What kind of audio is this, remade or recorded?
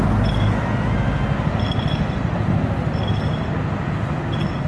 recorded